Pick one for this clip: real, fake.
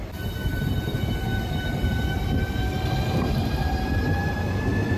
real